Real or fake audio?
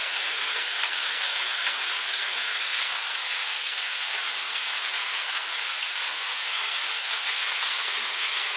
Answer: fake